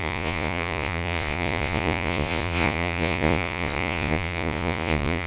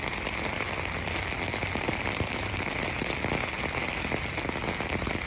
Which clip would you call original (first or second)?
second